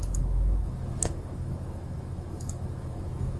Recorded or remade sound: remade